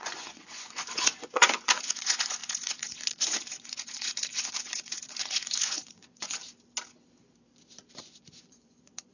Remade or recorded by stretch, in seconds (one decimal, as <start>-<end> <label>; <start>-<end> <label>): 0.0-6.4 remade; 6.4-8.0 recorded; 8.0-9.1 remade